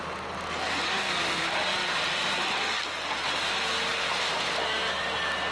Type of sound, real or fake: real